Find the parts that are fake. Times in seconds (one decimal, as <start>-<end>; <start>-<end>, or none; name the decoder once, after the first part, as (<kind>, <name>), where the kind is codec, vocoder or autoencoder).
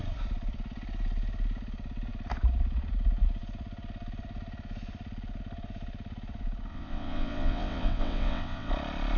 6.7-8.7 (vocoder, WaveNeXt)